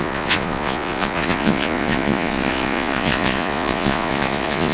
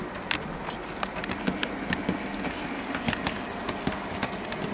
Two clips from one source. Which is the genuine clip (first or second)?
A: second